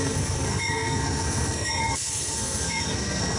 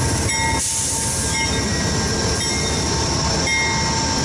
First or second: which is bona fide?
second